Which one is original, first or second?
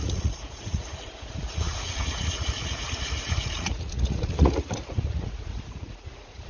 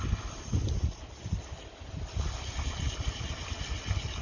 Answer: second